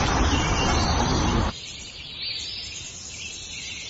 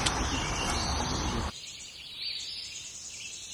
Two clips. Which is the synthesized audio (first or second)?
first